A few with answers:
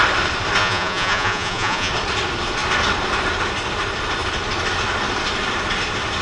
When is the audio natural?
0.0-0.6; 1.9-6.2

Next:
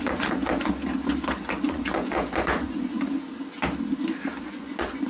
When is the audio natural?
0.7-1.4; 2.9-4.4

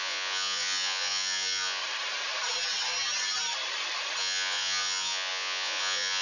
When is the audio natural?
1.8-4.2